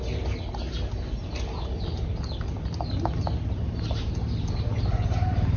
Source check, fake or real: real